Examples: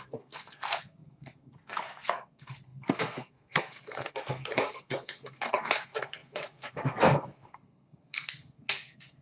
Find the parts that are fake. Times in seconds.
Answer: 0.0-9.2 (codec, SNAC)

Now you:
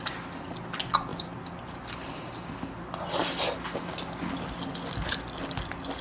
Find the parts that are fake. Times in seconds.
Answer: none

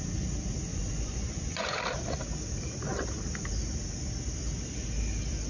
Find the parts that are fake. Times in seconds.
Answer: 0.7-1.8 (vocoder, Vocos)

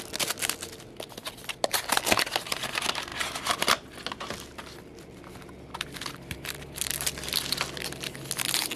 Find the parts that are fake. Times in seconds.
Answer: none

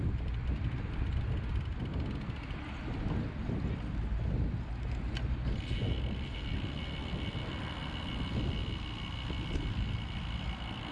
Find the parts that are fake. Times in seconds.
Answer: 0.0-1.9 (vocoder, BigVGAN v2); 6.1-8.6; 9.6-10.9

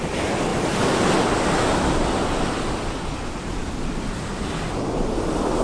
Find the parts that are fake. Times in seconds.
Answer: none

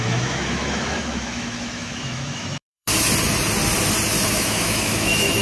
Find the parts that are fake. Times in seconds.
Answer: 0.0-2.9 (autoencoder, DAC-VAE); 4.3-5.4

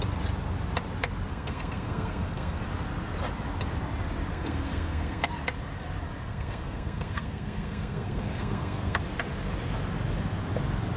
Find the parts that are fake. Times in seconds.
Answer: 1.3-2.6 (codec, SNAC); 4.3-5.3; 6.3-9.0